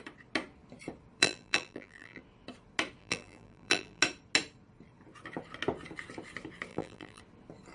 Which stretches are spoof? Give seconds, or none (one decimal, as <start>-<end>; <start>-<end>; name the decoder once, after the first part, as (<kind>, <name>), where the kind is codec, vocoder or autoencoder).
1.2-2.2 (vocoder, BigVGAN v2); 3.0-4.0; 6.7-7.2